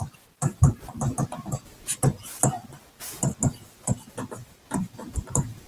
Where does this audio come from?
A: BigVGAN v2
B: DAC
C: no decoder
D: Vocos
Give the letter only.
A